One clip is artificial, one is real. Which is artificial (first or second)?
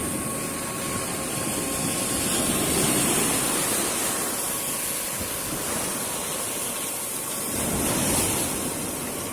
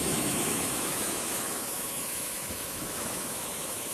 second